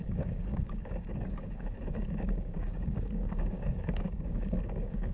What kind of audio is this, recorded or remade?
remade